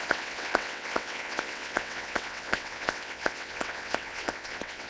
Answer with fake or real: fake